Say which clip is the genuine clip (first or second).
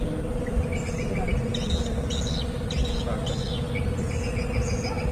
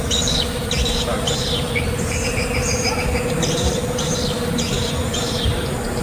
first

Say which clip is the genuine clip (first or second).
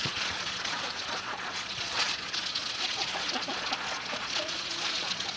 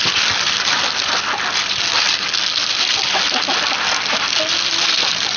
second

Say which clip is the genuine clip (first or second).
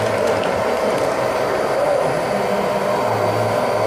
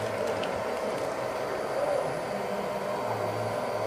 second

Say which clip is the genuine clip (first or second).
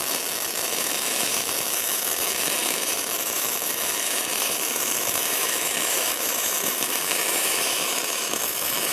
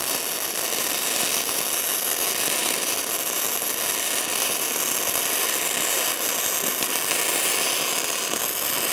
second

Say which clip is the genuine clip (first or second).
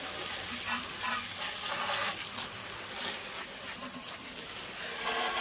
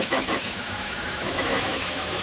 first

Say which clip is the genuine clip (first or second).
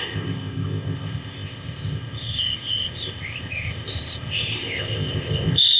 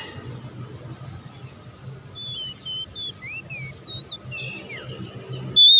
second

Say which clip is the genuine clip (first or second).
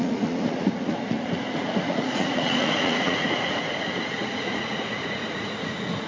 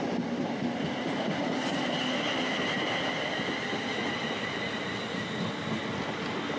second